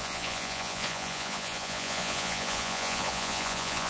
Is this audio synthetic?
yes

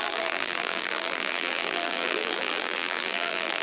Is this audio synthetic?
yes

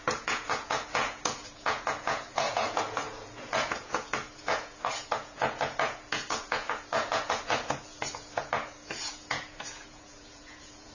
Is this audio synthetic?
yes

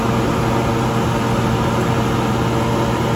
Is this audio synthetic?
no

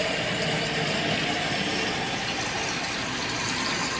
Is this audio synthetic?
no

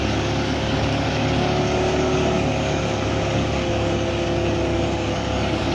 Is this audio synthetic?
yes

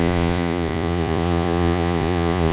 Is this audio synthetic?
yes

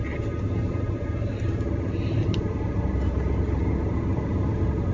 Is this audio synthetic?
no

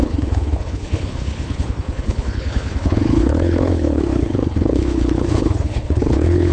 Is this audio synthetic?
yes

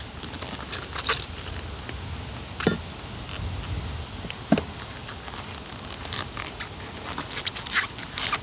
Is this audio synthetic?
no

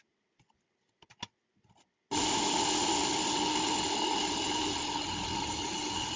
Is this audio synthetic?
no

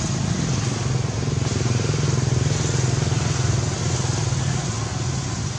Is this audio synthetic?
no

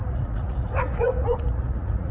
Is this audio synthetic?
yes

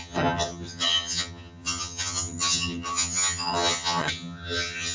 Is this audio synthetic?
yes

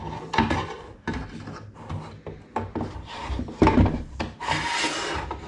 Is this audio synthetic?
no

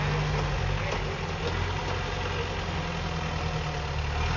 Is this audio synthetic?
no